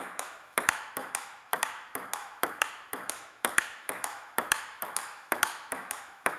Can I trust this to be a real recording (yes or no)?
no